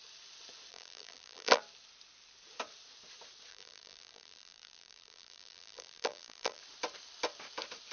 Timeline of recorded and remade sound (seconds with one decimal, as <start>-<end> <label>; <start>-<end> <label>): 0.0-0.7 recorded; 0.7-1.6 remade; 1.6-3.5 recorded; 3.5-6.6 remade; 6.6-7.9 recorded